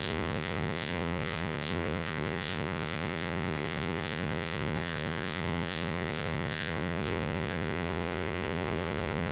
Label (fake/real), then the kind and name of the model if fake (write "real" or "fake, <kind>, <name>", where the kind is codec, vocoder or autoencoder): fake, vocoder, Vocos